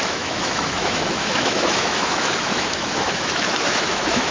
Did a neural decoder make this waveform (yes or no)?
yes